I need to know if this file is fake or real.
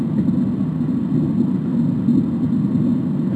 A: real